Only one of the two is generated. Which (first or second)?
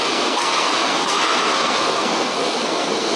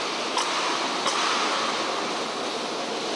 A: first